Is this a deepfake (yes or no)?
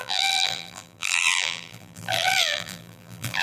yes